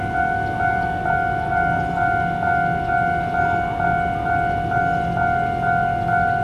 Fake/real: real